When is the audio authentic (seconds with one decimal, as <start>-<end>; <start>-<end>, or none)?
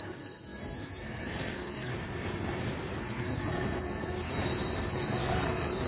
1.9-3.0; 4.3-4.9